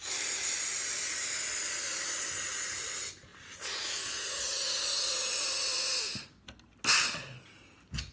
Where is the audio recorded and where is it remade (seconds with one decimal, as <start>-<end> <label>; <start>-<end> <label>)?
0.0-8.1 recorded

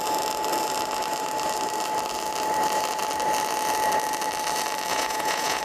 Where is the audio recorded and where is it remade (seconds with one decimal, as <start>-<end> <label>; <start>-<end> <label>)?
0.0-4.9 recorded; 4.9-5.6 remade

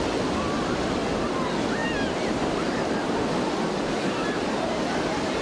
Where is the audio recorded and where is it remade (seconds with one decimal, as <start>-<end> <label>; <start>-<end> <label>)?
0.0-5.4 recorded

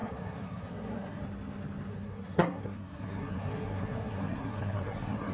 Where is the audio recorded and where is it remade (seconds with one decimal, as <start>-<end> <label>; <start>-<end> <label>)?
0.0-1.2 remade; 1.2-1.9 recorded; 1.9-5.3 remade

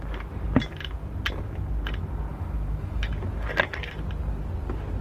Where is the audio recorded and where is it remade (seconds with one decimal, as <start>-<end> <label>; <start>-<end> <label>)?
0.0-2.3 recorded; 2.3-3.1 remade; 3.1-5.0 recorded